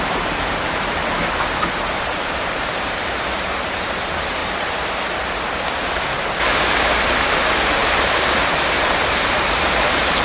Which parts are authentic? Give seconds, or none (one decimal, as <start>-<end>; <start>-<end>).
1.0-1.9; 4.4-6.4